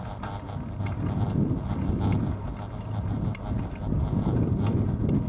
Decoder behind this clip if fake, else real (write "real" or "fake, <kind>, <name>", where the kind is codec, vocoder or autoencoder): real